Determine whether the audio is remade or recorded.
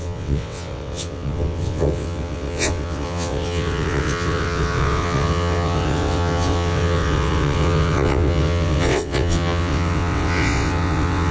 remade